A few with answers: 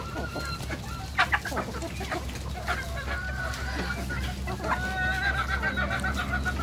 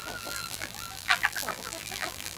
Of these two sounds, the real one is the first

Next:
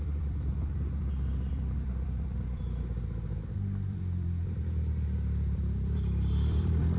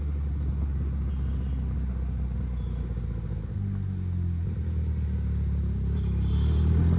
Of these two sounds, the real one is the second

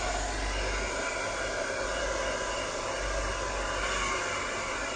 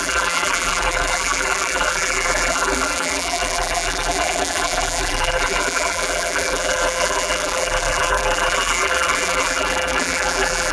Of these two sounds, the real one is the first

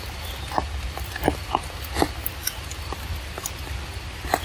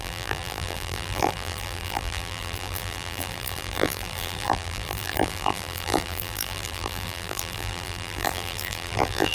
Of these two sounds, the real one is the first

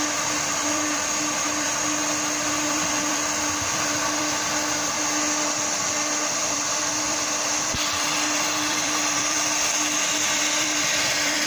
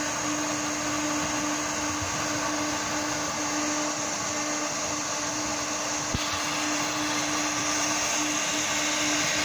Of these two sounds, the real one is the second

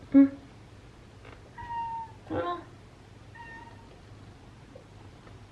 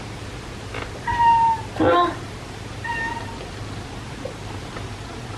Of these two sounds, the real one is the first